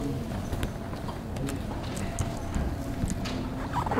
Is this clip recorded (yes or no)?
yes